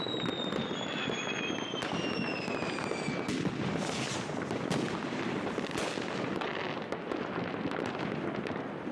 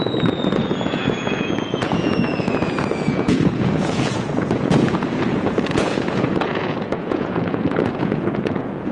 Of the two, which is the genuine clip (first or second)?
first